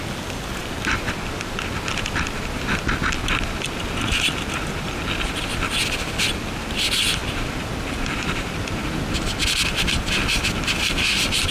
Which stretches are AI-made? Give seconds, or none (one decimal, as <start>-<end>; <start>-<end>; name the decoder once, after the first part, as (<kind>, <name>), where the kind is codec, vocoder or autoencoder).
7.2-8.8 (vocoder, BigVGAN v2)

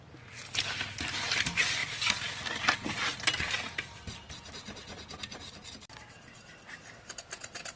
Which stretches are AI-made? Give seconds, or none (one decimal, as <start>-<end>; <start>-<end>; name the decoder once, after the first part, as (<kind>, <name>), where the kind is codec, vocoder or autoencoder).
none